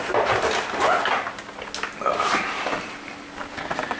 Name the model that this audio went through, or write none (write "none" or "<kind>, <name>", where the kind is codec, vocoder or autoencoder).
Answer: none